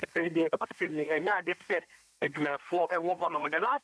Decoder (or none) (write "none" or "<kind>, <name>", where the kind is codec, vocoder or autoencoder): codec, SNAC